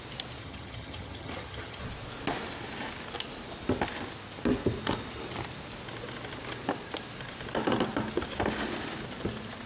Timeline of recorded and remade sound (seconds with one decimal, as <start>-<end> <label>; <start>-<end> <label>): 0.0-0.4 recorded; 0.4-1.8 remade; 1.8-9.7 recorded